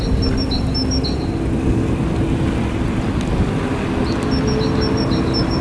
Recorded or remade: recorded